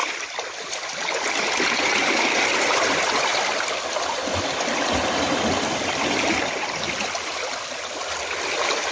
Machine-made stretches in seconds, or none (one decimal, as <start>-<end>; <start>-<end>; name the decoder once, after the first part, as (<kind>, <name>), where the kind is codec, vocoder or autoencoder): none